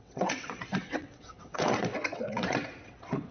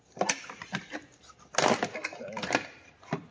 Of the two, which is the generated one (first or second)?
first